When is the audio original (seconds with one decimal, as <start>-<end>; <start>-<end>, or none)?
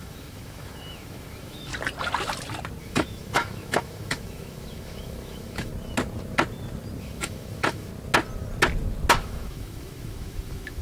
1.7-2.8; 5.7-7.0; 7.9-9.2